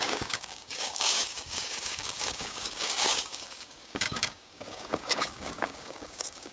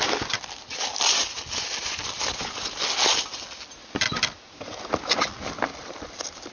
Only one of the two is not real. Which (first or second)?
first